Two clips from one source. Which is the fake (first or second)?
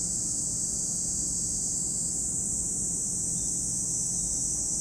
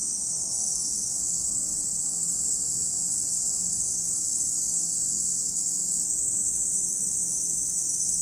second